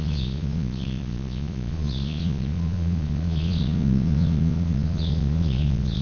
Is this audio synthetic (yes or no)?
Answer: yes